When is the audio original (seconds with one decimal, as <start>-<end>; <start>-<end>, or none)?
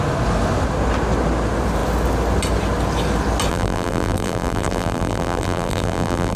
0.0-3.5